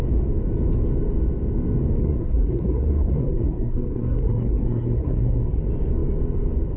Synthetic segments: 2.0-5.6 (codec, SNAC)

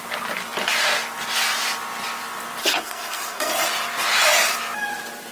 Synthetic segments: 2.6-3.5 (codec, SNAC)

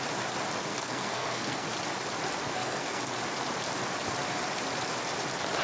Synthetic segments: 0.7-1.7 (codec, SNAC); 2.5-3.0

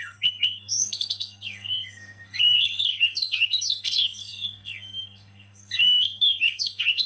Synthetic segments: 0.0-7.1 (codec, SNAC)

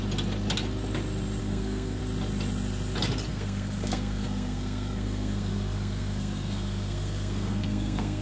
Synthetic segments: 1.4-2.0 (codec, SNAC); 3.3-8.2

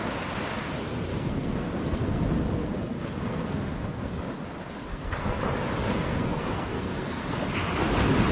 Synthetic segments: 1.1-2.2 (codec, SNAC); 2.6-4.2; 4.9-5.4; 5.9-7.4